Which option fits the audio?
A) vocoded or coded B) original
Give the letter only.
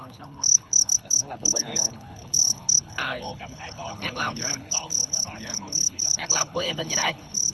A